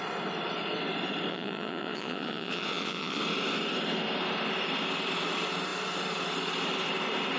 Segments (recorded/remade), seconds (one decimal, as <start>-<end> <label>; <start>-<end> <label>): 0.0-1.3 recorded; 1.3-3.2 remade; 3.2-7.4 recorded